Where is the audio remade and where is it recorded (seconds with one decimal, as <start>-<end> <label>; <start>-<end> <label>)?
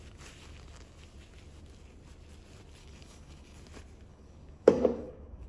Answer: 0.0-2.8 recorded; 2.8-3.6 remade; 3.6-4.1 recorded; 4.1-5.5 remade